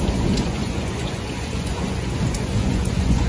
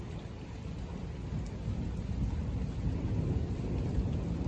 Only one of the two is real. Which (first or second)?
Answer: second